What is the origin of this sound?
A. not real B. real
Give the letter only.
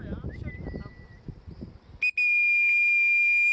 B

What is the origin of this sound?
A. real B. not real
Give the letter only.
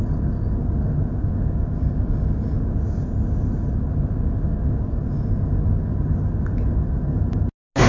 A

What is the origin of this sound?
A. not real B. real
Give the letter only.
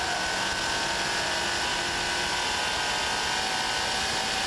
B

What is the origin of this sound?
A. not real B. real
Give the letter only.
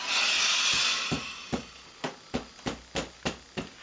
B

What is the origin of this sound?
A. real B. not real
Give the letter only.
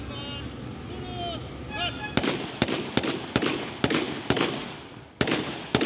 A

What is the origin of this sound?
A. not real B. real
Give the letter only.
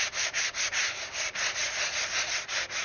B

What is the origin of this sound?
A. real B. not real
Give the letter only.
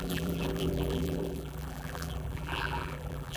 B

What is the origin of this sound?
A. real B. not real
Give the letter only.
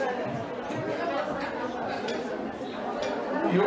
A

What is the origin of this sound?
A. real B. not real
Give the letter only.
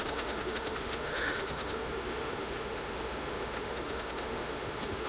B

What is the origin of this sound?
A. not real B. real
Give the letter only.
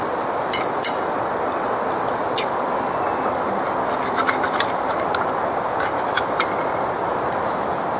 B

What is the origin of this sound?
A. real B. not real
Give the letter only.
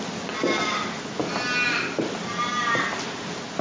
A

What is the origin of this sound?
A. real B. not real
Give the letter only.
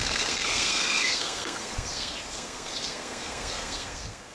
B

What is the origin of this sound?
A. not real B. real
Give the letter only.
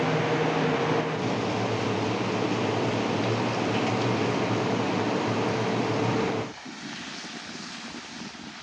B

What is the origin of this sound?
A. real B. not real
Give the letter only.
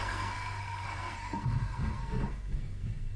B